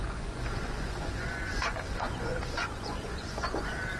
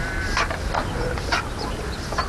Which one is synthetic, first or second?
first